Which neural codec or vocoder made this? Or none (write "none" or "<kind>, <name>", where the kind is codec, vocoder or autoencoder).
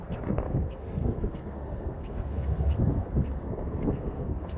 codec, SNAC